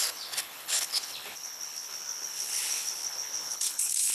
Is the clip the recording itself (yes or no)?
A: no